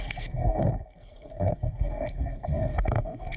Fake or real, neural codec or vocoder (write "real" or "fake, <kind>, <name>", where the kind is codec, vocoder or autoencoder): fake, codec, SNAC